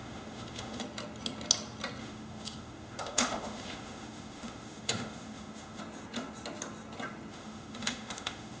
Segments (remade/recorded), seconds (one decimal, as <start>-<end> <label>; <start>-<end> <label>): 0.0-0.8 remade; 0.8-2.0 recorded; 2.0-5.8 remade; 5.8-7.3 recorded; 7.3-8.6 remade